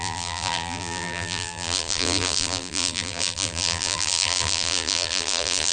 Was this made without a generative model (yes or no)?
no